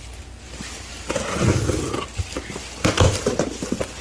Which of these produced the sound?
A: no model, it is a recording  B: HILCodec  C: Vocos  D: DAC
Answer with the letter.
A